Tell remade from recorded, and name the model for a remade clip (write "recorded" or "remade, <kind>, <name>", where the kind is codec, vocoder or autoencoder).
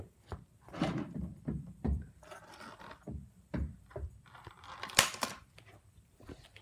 remade, vocoder, BigVGAN v2